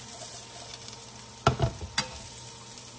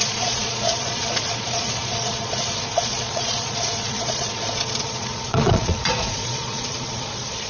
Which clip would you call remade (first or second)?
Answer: second